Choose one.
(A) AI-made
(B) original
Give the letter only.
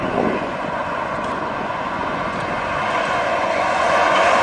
A